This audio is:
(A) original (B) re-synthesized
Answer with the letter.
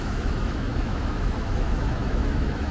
B